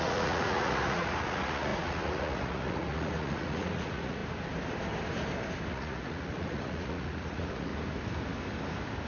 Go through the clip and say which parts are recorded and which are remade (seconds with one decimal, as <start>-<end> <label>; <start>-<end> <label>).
0.0-4.2 remade; 4.2-5.7 recorded; 5.7-7.7 remade; 7.7-9.1 recorded